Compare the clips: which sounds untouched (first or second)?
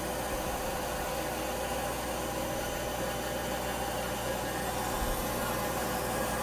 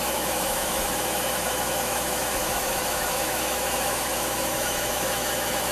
first